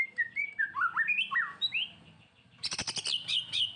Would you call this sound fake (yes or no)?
no